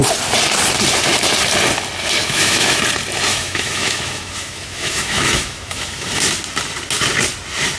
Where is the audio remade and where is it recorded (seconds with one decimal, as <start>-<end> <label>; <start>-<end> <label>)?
0.0-2.2 recorded; 2.2-2.8 remade; 2.8-3.3 recorded; 3.3-6.2 remade; 6.2-7.8 recorded